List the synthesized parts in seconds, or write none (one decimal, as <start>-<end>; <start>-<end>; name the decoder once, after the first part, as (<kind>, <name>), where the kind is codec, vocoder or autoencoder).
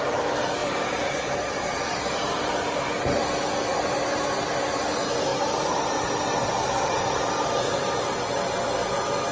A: 0.6-2.9 (vocoder, BigVGAN v2); 3.7-4.4; 5.3-8.0